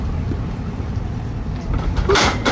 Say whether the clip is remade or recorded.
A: recorded